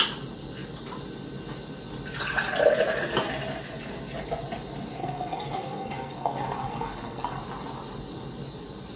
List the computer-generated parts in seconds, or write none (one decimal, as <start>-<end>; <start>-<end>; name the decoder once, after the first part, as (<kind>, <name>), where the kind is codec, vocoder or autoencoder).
5.0-7.4 (codec, SNAC)